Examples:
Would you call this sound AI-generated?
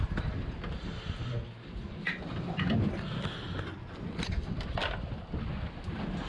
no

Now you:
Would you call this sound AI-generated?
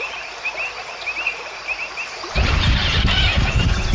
no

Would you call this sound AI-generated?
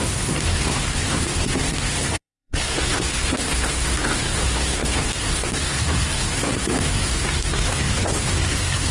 yes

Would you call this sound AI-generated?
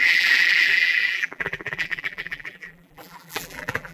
yes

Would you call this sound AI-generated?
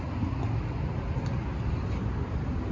no